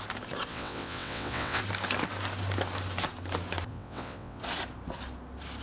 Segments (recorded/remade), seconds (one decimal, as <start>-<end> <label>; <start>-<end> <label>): 0.0-0.5 recorded; 0.5-1.6 remade; 1.6-3.7 recorded; 3.7-4.4 remade; 4.4-5.6 recorded